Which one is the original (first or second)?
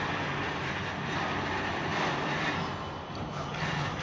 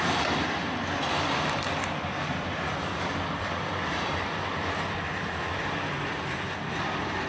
first